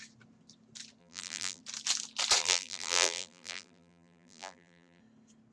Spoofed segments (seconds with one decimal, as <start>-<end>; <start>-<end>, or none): 1.0-1.6; 2.4-5.0